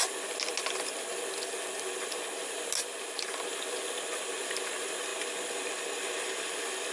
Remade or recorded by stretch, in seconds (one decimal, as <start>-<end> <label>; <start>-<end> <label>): 0.0-6.9 recorded